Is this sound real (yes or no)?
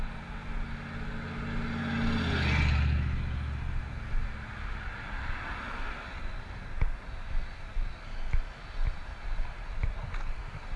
yes